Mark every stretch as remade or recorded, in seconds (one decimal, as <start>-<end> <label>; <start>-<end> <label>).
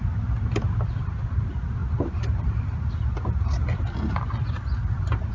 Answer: 0.0-5.3 recorded